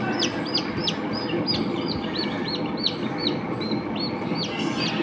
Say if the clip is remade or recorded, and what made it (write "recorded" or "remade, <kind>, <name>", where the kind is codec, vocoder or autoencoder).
recorded